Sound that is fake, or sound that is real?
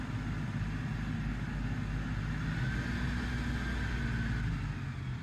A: real